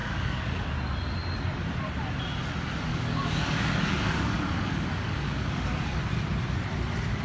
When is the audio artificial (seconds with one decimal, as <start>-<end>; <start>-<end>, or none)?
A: 0.0-0.7; 2.9-6.0